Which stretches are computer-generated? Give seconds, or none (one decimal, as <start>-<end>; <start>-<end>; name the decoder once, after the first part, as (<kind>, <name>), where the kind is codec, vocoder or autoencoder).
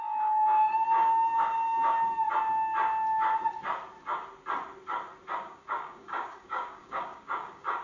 0.0-2.2 (codec, DAC); 5.4-7.8